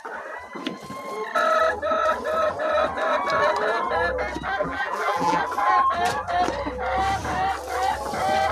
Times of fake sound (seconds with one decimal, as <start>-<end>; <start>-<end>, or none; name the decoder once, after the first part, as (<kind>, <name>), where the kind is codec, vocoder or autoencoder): 4.6-5.4 (vocoder, BigVGAN v2)